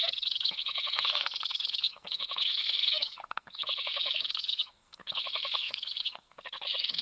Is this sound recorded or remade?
remade